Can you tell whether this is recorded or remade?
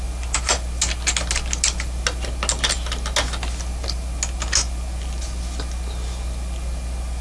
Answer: recorded